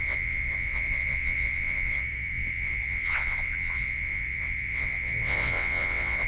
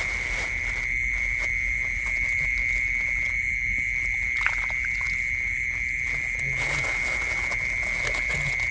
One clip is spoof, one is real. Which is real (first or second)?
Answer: second